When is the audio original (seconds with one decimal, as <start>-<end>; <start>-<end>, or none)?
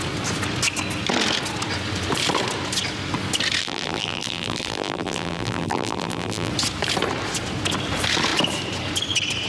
0.0-3.6; 6.5-9.5